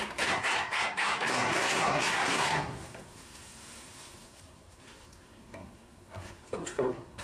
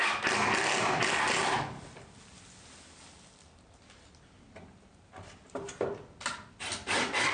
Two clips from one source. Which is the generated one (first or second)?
first